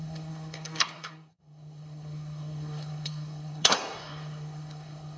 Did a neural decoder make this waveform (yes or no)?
yes